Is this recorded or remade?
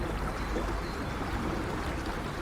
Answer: recorded